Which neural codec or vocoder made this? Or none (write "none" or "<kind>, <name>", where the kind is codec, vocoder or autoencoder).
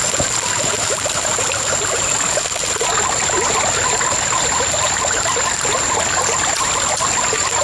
none